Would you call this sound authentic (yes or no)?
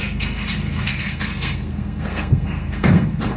no